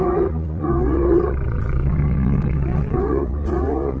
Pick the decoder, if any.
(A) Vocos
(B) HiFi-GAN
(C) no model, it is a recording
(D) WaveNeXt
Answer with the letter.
D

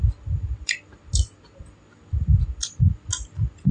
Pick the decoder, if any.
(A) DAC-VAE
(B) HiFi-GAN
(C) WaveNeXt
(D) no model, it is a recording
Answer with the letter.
D